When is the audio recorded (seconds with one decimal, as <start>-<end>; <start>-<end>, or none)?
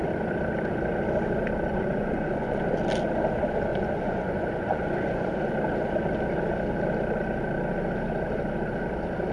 0.0-1.7; 2.6-3.7; 5.5-9.3